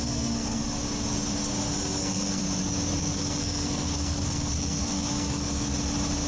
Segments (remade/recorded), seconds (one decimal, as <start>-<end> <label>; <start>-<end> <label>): 0.0-0.6 remade; 0.6-2.0 recorded; 2.0-2.4 remade; 2.4-3.0 recorded; 3.0-5.7 remade; 5.7-6.3 recorded